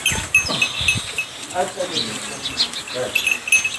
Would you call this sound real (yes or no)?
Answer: yes